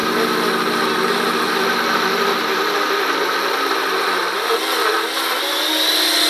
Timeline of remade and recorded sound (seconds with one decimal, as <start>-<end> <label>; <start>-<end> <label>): 0.0-6.3 recorded

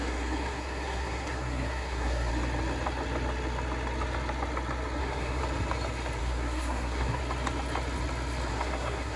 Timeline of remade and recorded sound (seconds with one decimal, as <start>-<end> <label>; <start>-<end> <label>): 0.0-2.3 remade; 2.3-5.0 recorded; 5.0-5.4 remade; 5.4-6.2 recorded; 6.2-7.2 remade; 7.2-8.5 recorded; 8.5-9.2 remade

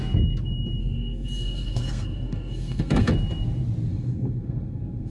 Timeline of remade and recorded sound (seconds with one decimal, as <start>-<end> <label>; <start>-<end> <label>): 0.0-0.8 recorded; 0.8-3.1 remade; 3.1-3.9 recorded; 3.9-5.1 remade

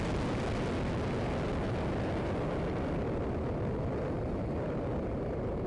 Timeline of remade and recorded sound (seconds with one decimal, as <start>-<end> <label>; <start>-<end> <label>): 0.0-5.7 recorded